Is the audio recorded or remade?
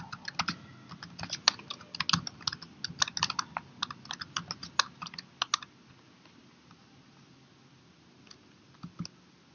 recorded